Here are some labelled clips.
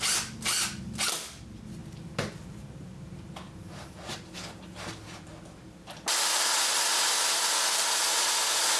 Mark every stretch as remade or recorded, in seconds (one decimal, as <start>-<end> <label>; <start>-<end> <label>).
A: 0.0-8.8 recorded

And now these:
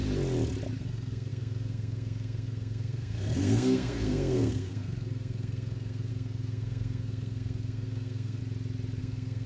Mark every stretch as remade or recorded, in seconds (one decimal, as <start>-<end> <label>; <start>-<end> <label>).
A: 0.0-0.8 recorded; 0.8-8.4 remade; 8.4-9.0 recorded; 9.0-9.5 remade

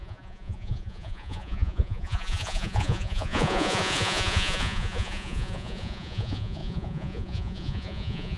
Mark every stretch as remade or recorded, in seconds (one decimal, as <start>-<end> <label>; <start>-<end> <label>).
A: 0.0-8.4 remade

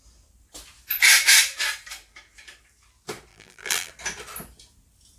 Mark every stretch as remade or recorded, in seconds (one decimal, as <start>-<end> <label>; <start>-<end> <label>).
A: 0.0-3.3 recorded; 3.3-3.9 remade; 3.9-5.2 recorded

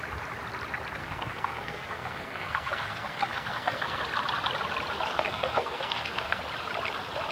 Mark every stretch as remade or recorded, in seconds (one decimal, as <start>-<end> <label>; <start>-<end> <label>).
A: 0.0-1.0 recorded; 1.0-4.0 remade; 4.0-5.1 recorded; 5.1-6.4 remade; 6.4-7.3 recorded

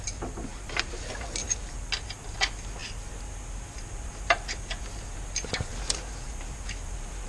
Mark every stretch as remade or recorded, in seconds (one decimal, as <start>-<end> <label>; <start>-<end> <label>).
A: 0.0-7.3 recorded

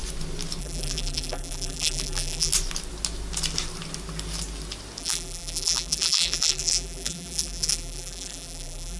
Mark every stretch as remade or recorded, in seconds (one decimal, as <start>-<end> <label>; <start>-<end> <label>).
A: 0.0-0.6 recorded; 0.6-2.5 remade; 2.5-5.0 recorded; 5.0-9.0 remade

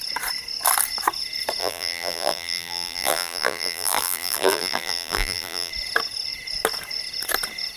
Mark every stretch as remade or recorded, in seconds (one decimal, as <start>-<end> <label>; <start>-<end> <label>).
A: 0.0-1.6 recorded; 1.6-5.7 remade; 5.7-7.8 recorded